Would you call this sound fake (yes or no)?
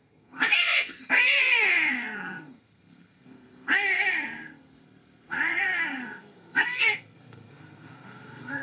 yes